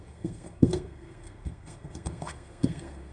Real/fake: fake